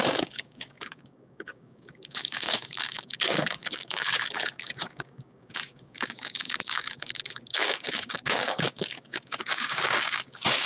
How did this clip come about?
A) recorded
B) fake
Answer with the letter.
B